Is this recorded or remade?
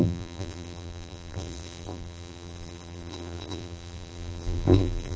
remade